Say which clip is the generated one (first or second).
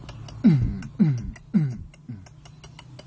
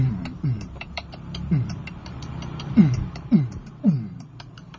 second